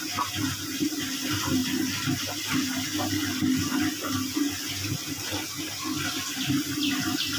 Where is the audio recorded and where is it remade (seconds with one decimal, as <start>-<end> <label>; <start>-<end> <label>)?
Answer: 0.0-7.4 recorded